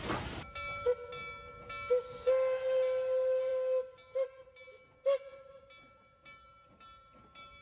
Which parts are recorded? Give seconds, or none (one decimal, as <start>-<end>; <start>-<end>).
0.0-7.6